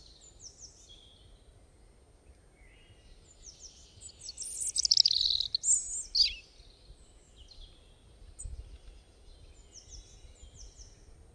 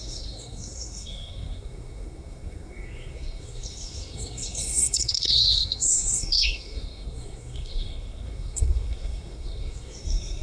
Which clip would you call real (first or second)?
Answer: first